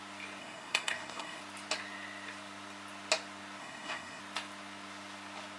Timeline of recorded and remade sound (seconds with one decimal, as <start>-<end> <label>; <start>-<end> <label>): 0.0-0.4 recorded; 0.4-1.4 remade; 1.4-3.6 recorded; 3.6-4.2 remade; 4.2-5.6 recorded